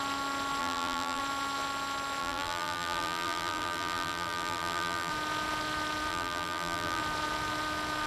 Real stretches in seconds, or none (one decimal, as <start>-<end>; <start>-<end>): 0.0-0.6; 1.2-2.2; 5.1-6.1; 7.0-8.1